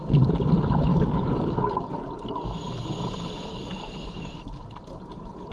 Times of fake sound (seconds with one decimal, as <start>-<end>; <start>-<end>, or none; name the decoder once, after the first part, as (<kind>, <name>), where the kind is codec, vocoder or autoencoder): 0.9-1.6 (codec, DAC); 3.5-4.4